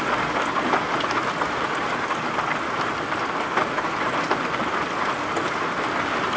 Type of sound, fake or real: real